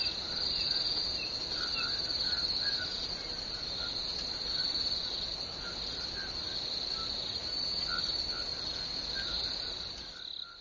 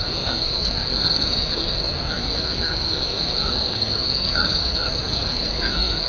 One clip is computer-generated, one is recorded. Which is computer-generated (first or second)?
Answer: second